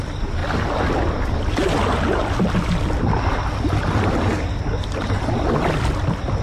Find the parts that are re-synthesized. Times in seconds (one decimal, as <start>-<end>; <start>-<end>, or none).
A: none